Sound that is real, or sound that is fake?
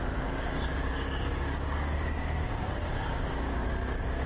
fake